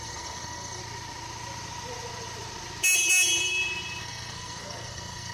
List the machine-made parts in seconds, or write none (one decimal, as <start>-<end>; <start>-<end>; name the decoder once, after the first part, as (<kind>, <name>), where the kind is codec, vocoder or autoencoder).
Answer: 0.0-0.8 (codec, SNAC); 4.0-5.3